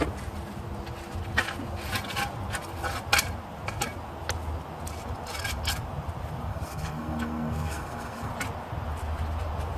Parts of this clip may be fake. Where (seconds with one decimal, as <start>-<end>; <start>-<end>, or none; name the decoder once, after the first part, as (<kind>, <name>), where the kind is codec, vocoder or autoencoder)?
6.5-8.3 (codec, SNAC)